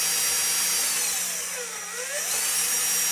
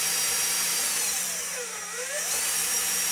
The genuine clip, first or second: first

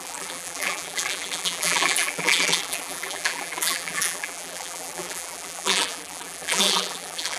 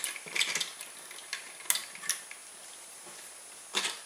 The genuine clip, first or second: second